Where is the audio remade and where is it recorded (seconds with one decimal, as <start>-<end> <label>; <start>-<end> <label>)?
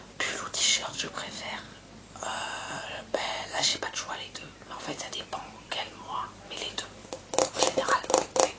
0.0-8.6 recorded